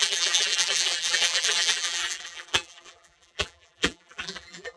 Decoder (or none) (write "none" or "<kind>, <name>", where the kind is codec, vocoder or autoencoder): vocoder, BigVGAN v2